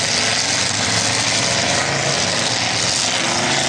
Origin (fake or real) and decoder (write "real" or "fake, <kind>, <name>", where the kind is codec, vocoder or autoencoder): real